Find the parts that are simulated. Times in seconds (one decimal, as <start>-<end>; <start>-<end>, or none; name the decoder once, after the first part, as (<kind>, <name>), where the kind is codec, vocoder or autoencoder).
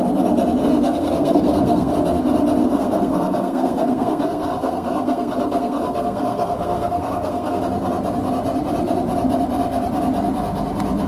0.6-1.9 (codec, SNAC); 2.6-7.6